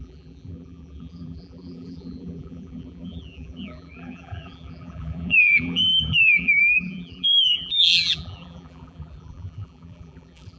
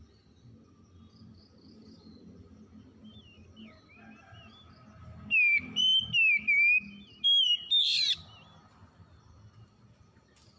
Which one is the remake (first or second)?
first